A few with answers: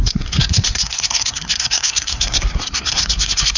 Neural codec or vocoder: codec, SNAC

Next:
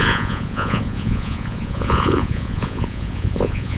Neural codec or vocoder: vocoder, Vocos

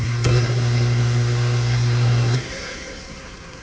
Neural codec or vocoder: codec, SNAC